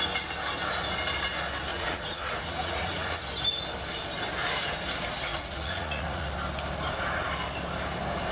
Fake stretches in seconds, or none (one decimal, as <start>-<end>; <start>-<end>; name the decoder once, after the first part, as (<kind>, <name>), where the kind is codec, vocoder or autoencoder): 1.7-3.2 (vocoder, Vocos); 5.3-6.3

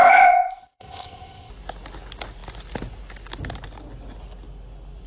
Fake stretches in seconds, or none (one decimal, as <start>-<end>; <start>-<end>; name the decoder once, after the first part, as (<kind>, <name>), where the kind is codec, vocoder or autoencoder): 0.0-1.5 (codec, ZipCodec)

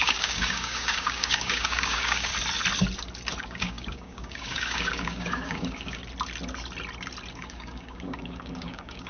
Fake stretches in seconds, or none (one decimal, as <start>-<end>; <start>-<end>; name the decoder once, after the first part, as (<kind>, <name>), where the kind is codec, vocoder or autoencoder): 0.0-2.3 (codec, DAC); 3.4-6.0; 7.3-9.1

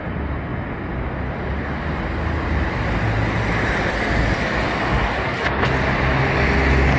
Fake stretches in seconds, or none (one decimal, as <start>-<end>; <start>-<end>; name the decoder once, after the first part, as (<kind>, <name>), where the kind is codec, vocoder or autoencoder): none

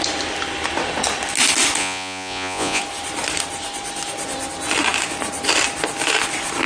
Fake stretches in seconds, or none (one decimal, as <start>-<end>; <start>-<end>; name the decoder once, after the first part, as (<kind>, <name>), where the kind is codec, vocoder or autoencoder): 1.8-2.8 (vocoder, Vocos)

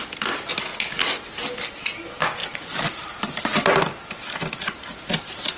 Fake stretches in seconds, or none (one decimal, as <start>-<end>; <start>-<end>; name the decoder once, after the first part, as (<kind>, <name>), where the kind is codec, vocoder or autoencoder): 2.4-3.4 (vocoder, BigVGAN v2)

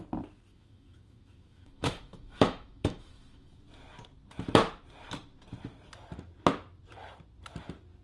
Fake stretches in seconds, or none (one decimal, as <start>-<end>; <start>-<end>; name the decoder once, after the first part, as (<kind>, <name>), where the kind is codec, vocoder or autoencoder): 0.5-3.6 (autoencoder, DAC-VAE)